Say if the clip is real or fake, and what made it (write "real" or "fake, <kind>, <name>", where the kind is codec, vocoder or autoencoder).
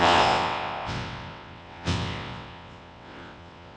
fake, vocoder, WaveNeXt